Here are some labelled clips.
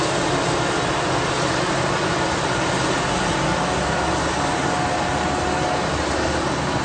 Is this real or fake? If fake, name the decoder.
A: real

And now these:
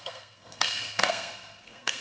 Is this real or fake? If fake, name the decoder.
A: fake, codec, SNAC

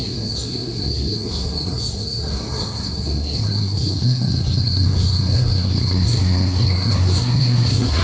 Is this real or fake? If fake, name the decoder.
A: fake, codec, SNAC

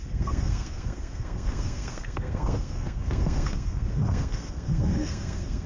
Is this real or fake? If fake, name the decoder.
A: fake, codec, SNAC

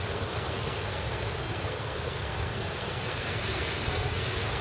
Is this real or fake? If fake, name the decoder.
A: fake, codec, SNAC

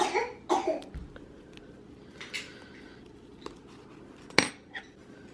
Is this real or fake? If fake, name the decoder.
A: real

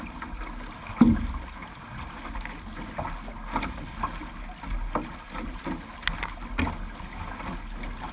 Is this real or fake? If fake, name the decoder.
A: real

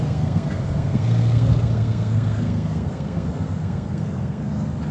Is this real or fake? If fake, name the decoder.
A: fake, codec, SNAC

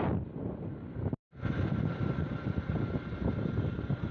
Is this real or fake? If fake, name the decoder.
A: real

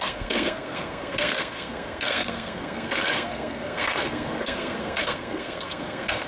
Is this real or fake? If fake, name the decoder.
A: fake, codec, SNAC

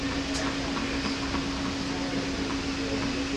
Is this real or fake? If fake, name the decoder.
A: real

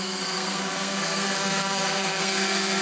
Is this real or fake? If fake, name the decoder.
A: fake, codec, SNAC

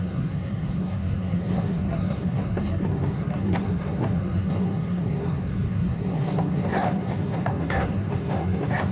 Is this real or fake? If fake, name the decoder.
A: fake, codec, SNAC